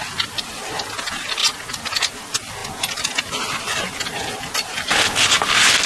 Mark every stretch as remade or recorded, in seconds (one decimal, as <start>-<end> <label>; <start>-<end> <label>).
0.0-5.9 recorded

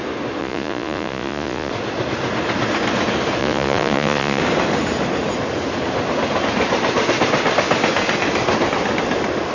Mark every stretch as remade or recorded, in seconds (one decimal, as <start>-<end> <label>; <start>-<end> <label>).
0.0-0.4 recorded; 0.4-1.7 remade; 1.7-3.4 recorded; 3.4-4.4 remade; 4.4-9.5 recorded

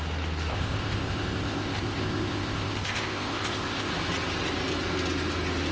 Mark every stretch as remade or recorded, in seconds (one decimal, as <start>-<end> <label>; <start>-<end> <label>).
0.0-0.5 recorded; 0.5-3.9 remade; 3.9-5.7 recorded

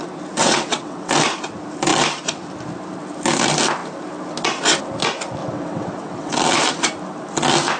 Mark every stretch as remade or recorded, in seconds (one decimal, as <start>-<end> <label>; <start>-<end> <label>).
0.0-0.4 recorded; 0.4-1.1 remade; 1.1-5.4 recorded; 5.4-6.3 remade; 6.3-7.8 recorded

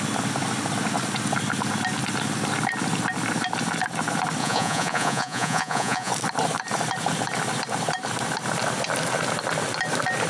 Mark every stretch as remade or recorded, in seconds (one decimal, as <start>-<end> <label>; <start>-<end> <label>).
0.0-4.4 recorded; 4.4-6.1 remade; 6.1-10.3 recorded